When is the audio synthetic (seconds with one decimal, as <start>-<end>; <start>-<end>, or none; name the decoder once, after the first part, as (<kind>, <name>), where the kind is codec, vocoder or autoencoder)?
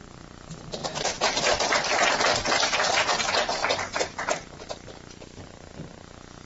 0.8-1.6 (vocoder, BigVGAN v2); 3.6-5.7